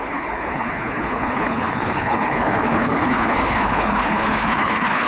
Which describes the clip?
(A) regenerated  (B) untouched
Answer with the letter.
A